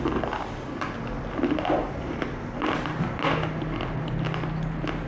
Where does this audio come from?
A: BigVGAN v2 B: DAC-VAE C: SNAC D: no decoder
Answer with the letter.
D